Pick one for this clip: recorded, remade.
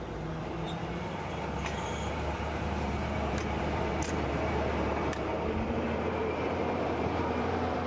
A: remade